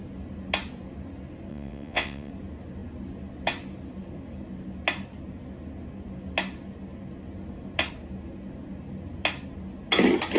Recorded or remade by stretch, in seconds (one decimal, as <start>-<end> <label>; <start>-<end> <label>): 0.0-1.5 recorded; 1.5-2.3 remade; 2.3-10.4 recorded